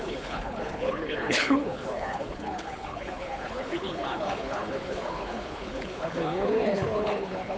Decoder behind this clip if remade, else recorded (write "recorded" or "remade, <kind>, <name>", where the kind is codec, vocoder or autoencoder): remade, codec, HILCodec